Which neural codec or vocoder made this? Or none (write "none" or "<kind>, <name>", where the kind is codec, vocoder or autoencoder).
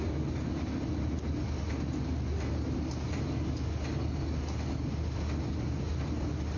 none